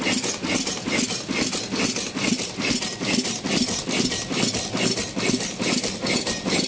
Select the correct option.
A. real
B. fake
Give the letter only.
A